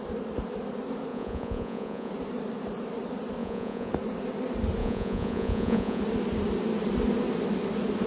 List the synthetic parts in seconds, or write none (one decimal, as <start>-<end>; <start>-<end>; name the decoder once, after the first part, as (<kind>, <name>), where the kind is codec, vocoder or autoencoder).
1.1-2.1 (vocoder, Vocos); 3.4-3.9; 4.8-6.0